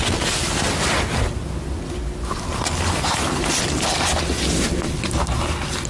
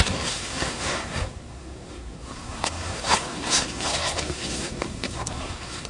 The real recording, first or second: first